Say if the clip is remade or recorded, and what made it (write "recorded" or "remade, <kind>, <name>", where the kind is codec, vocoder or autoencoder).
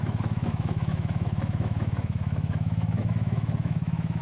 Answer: remade, autoencoder, DAC-VAE